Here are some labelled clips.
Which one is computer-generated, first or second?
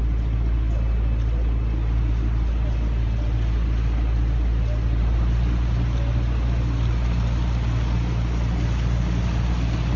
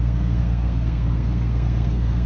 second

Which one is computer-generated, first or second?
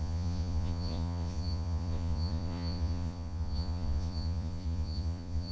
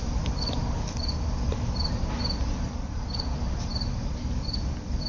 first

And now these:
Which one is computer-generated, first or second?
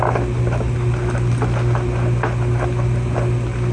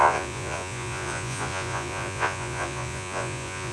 second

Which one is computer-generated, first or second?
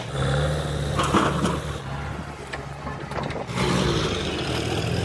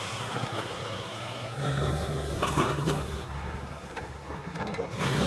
second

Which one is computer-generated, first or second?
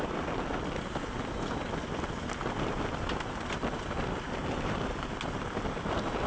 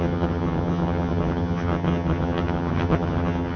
second